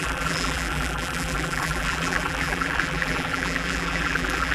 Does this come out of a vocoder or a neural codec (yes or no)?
yes